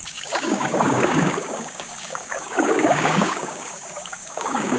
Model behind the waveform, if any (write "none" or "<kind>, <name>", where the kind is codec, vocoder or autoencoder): codec, DAC